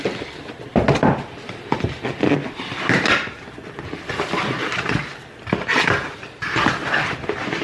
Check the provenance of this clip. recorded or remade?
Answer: recorded